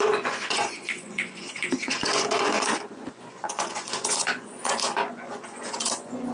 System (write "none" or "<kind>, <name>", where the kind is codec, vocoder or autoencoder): vocoder, Vocos